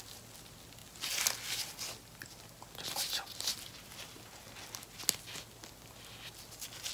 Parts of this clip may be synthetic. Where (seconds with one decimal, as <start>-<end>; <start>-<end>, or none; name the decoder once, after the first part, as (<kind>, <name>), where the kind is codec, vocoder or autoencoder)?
none